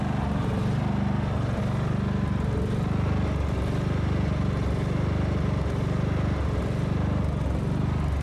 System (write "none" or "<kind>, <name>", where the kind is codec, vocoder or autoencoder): none